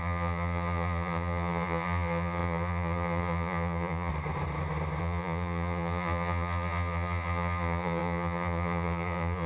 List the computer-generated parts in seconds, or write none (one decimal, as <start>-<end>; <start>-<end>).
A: 0.0-4.1; 5.0-9.5